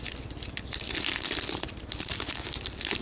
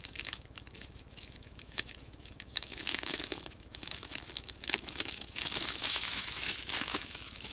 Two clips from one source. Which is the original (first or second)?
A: first